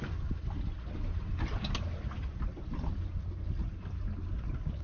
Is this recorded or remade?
recorded